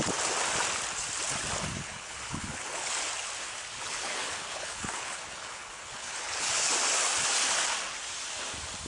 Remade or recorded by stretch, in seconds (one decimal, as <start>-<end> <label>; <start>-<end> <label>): 0.0-1.7 recorded; 1.7-3.1 remade; 3.1-3.8 recorded; 3.8-6.7 remade; 6.7-8.9 recorded

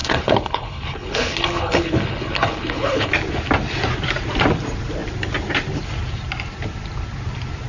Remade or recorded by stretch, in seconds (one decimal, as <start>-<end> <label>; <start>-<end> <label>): 0.0-3.1 remade; 3.1-7.7 recorded